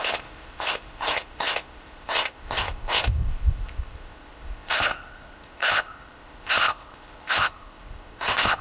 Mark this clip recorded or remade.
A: remade